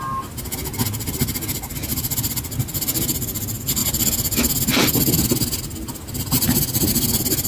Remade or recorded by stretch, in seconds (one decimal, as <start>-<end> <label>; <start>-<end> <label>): 0.0-7.5 recorded